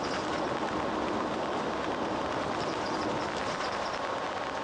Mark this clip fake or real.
real